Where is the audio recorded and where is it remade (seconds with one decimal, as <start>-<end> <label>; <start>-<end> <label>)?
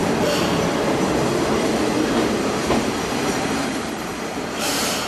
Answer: 0.0-5.1 remade